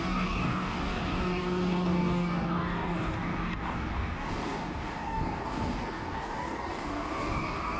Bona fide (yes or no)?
no